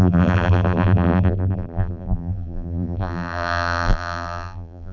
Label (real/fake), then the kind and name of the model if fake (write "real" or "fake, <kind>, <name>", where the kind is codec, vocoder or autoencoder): fake, vocoder, BigVGAN v2